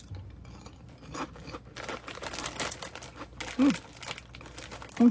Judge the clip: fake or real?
real